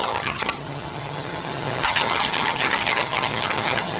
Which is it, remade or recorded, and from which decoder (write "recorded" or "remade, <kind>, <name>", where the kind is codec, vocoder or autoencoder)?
remade, vocoder, HiFi-GAN